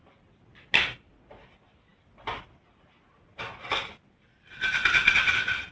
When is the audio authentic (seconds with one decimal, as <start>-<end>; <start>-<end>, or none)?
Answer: 0.0-5.7